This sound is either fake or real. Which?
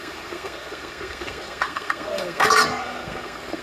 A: fake